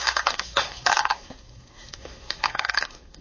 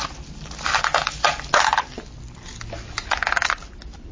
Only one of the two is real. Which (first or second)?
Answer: second